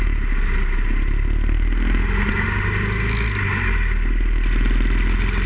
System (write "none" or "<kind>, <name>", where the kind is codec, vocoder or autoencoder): none